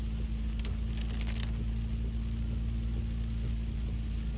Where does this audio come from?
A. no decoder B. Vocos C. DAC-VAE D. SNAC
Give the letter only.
A